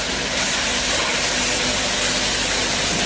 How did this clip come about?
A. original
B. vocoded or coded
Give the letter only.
A